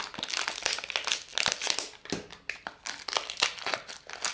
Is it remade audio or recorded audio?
recorded